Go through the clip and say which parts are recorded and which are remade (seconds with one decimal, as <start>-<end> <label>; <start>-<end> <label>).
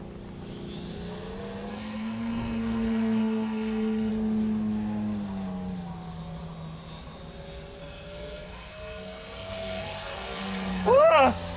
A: 0.0-1.7 recorded; 1.7-4.1 remade; 4.1-7.8 recorded; 7.8-11.1 remade; 11.1-11.6 recorded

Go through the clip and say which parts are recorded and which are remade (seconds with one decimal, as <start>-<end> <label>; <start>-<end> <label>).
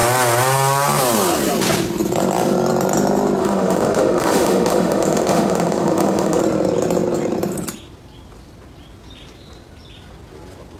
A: 0.0-3.4 recorded; 3.4-6.4 remade; 6.4-10.8 recorded